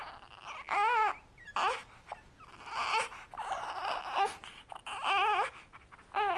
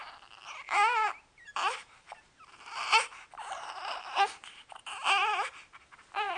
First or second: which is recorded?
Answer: first